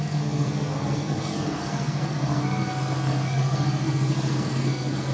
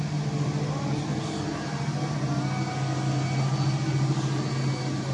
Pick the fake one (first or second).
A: first